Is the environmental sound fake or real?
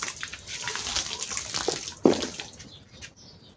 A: real